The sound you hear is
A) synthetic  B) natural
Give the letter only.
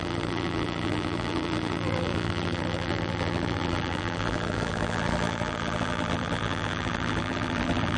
A